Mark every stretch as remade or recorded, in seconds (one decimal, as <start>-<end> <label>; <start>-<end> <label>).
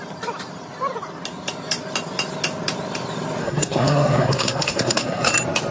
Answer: 0.0-3.4 recorded; 3.4-5.3 remade; 5.3-5.7 recorded